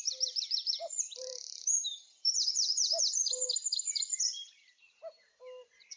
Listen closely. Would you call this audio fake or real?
fake